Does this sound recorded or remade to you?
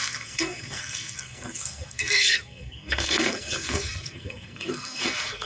remade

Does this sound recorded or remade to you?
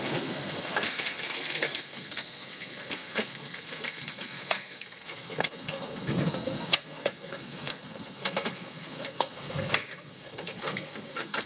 remade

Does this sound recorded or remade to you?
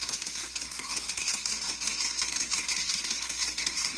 remade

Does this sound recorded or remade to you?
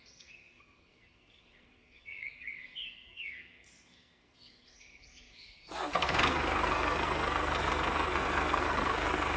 remade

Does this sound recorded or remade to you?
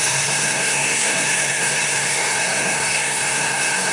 remade